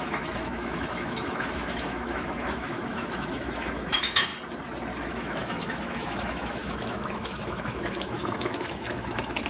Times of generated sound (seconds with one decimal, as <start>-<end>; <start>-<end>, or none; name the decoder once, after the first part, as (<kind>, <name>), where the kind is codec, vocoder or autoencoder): 0.0-4.3 (autoencoder, DAC-VAE); 5.0-9.5